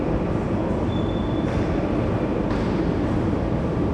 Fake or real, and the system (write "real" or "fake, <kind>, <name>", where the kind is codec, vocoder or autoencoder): real